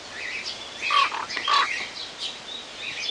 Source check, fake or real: real